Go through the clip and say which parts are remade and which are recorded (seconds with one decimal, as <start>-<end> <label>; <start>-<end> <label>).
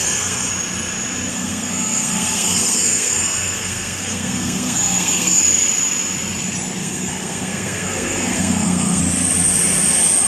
0.0-0.5 remade; 0.5-1.3 recorded; 1.3-5.4 remade; 5.4-6.8 recorded; 6.8-9.0 remade; 9.0-10.3 recorded